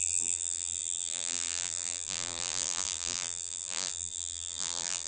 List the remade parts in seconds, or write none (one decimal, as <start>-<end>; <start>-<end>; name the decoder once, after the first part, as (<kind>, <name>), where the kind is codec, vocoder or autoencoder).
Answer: 0.0-5.1 (vocoder, BigVGAN v2)